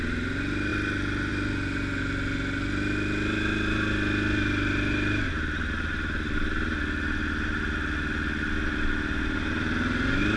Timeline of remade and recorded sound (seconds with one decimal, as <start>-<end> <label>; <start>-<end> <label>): 0.0-10.4 recorded